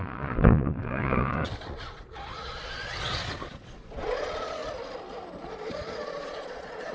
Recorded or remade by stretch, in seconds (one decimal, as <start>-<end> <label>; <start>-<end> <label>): 0.0-4.6 remade; 4.6-5.5 recorded; 5.5-6.9 remade